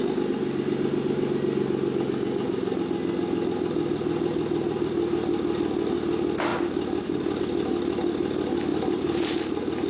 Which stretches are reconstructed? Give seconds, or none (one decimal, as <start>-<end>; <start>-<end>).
8.7-9.9